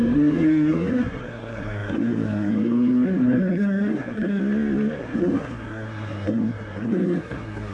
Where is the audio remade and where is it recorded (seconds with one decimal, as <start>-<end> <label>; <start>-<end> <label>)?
0.0-4.4 remade; 4.4-5.0 recorded; 5.0-7.7 remade